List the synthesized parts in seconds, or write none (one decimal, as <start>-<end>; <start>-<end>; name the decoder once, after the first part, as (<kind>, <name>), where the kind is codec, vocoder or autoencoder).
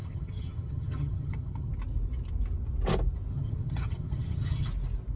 0.0-1.7 (vocoder, HiFi-GAN); 3.3-4.7